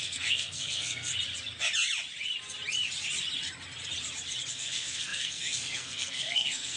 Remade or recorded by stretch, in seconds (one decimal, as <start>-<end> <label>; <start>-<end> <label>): 0.0-1.1 remade; 1.1-4.5 recorded; 4.5-6.8 remade